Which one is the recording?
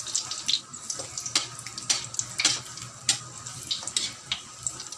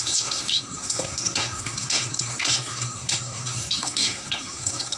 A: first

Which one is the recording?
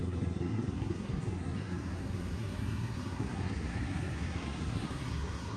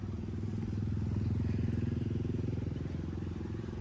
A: second